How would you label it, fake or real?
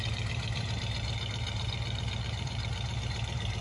fake